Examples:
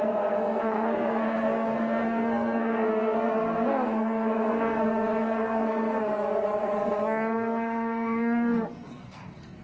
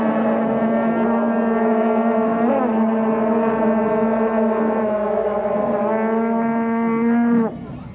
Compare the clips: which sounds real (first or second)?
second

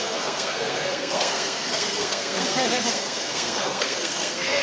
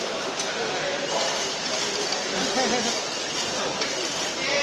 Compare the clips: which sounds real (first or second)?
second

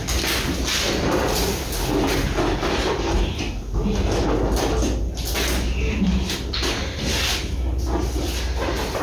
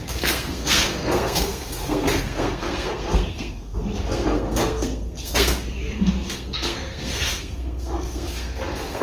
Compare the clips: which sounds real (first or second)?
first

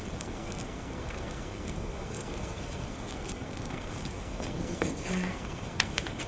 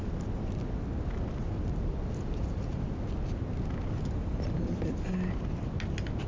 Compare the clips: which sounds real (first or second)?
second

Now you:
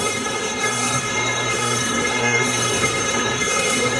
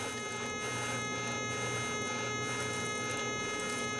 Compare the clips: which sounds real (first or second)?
second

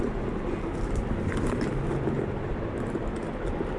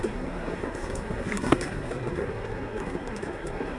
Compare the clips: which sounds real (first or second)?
first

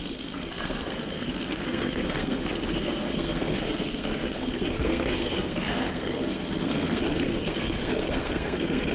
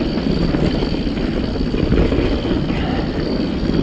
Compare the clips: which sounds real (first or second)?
second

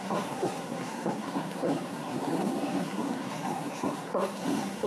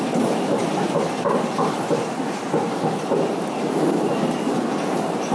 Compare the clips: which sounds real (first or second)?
second